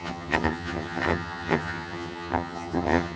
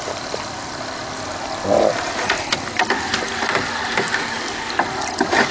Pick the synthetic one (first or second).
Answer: first